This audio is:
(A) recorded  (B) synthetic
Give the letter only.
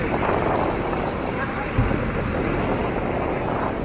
A